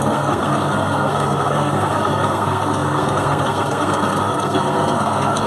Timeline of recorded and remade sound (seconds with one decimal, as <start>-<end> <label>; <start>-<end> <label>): 0.0-5.5 remade